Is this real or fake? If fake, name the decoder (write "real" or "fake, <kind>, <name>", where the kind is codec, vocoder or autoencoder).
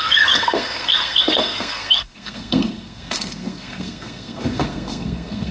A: fake, codec, SNAC